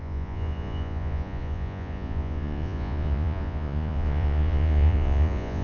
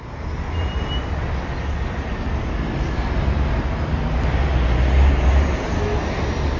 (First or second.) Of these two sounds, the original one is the second